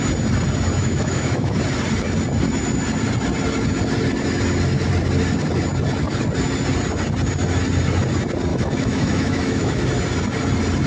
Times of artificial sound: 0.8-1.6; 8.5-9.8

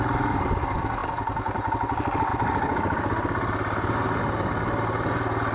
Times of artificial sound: none